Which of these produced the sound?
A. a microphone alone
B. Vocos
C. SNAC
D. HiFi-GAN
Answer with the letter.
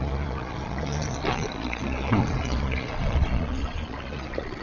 B